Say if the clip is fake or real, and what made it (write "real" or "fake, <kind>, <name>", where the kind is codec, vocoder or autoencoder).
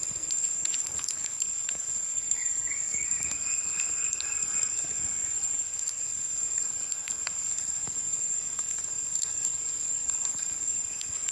fake, codec, SNAC